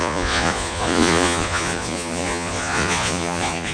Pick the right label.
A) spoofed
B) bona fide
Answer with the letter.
A